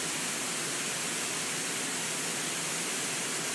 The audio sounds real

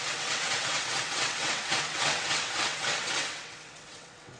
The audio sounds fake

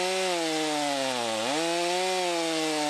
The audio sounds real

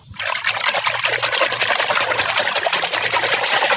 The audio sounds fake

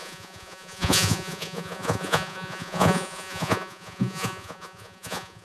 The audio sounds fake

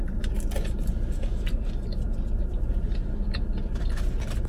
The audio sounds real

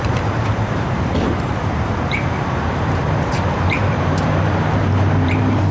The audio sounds fake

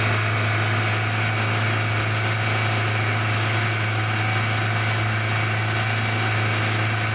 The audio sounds real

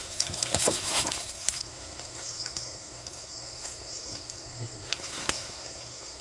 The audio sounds fake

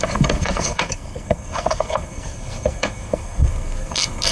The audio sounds fake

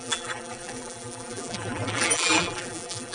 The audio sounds fake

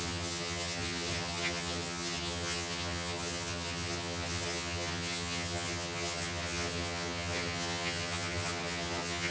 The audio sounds fake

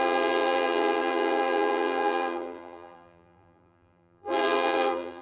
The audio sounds fake